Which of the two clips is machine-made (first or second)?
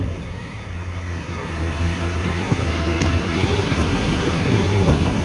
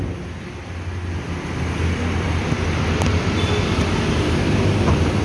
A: first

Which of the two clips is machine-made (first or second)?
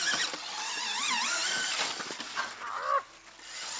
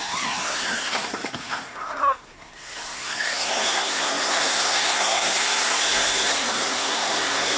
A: second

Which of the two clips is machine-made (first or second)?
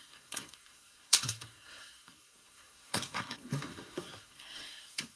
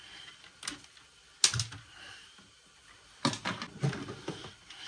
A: first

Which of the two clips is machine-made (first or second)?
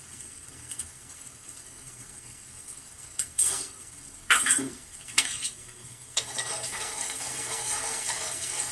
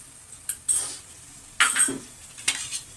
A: first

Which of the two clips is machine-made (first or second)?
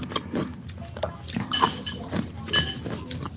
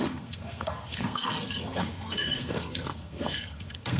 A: second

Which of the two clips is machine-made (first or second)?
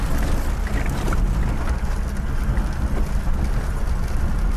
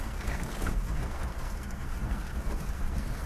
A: second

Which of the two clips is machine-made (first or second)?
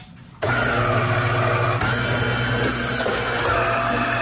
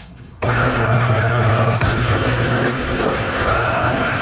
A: second